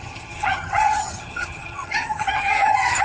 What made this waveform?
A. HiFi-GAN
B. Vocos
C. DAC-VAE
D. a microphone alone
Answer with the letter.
A